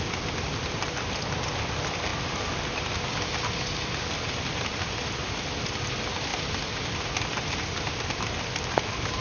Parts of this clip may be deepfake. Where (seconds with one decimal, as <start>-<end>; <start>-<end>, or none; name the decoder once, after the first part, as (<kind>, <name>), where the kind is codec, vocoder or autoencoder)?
none